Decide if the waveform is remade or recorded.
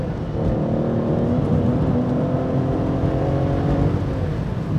recorded